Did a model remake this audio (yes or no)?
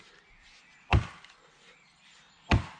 no